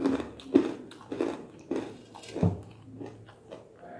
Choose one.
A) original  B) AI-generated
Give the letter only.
A